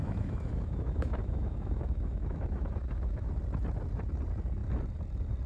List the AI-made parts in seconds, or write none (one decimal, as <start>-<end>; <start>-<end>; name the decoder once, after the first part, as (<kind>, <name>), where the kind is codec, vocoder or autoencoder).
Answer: 0.0-3.3 (autoencoder, DAC-VAE)